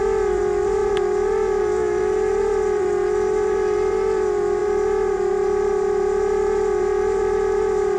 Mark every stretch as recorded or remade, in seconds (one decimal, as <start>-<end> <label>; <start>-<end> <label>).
0.0-8.0 remade